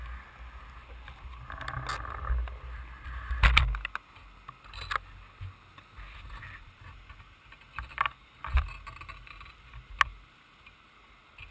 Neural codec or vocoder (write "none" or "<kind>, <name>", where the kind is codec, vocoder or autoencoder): none